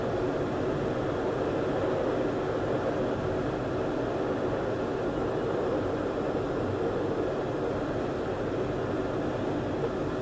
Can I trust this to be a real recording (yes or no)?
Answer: yes